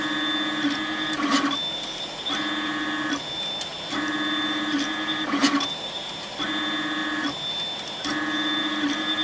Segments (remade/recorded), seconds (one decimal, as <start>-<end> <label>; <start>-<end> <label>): 0.0-9.2 recorded